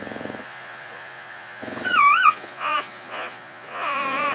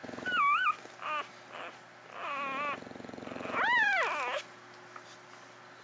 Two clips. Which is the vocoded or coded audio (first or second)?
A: first